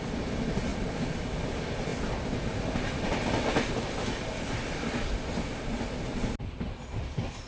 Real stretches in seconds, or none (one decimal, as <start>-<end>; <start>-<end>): 0.0-7.5

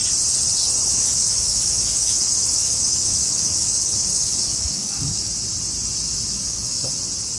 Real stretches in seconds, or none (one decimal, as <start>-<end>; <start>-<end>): 0.0-0.9; 5.3-6.3; 6.9-7.4